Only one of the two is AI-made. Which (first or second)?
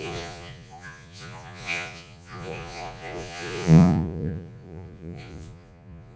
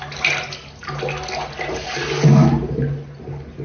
first